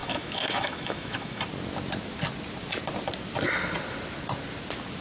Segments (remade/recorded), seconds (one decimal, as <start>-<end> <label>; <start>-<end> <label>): 0.0-1.4 remade; 1.4-5.0 recorded